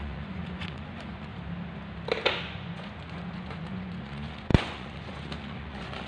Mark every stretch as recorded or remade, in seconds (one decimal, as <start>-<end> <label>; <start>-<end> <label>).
0.0-1.3 remade; 1.3-2.4 recorded; 2.4-6.1 remade

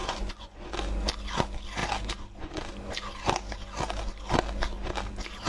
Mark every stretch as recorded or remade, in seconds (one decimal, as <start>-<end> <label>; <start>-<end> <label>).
0.0-0.7 remade; 0.7-5.5 recorded